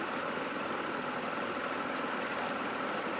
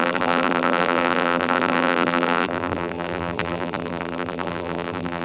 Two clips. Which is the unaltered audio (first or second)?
first